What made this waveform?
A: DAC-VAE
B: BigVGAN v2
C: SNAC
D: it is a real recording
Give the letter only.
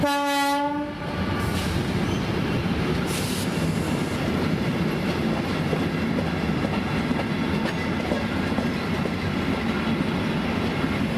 D